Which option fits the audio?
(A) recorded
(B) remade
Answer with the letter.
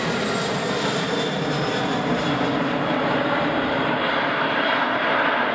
A